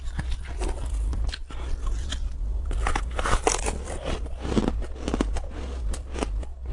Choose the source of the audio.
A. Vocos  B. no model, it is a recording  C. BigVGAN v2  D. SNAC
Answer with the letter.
B